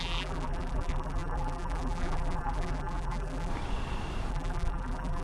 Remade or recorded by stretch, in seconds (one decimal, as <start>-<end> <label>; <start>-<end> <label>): 0.0-3.5 remade; 3.5-4.3 recorded; 4.3-5.2 remade

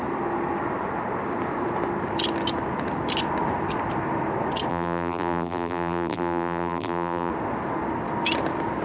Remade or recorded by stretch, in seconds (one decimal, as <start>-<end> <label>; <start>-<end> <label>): 0.0-4.7 recorded; 4.7-7.3 remade; 7.3-8.8 recorded

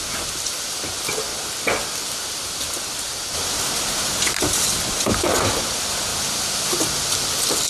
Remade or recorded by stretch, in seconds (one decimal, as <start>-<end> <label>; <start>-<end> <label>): 0.0-7.7 recorded

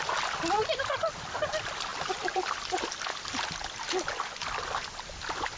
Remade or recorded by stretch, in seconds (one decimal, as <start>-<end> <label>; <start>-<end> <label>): 0.0-1.9 recorded; 1.9-2.5 remade; 2.5-5.6 recorded